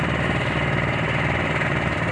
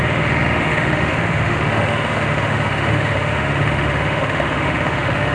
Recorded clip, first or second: first